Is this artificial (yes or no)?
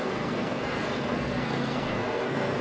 yes